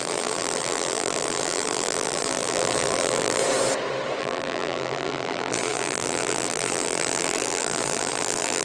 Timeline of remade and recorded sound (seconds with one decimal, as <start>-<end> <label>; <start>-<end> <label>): 0.0-3.4 remade; 3.4-4.2 recorded; 4.2-8.6 remade